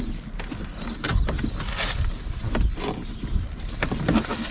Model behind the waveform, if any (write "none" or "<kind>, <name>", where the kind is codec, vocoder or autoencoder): none